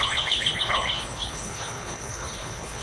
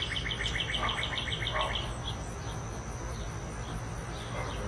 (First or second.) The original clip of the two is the second